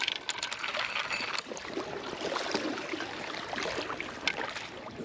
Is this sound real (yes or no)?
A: yes